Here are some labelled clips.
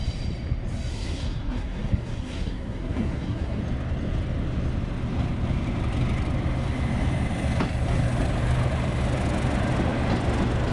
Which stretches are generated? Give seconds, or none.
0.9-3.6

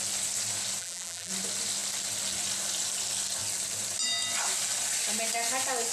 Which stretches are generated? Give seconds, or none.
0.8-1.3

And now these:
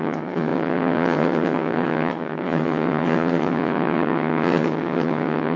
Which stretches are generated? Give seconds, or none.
0.0-5.6

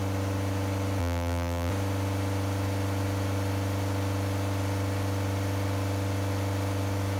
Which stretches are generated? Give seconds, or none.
1.0-1.7